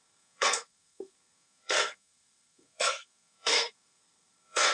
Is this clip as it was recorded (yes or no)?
no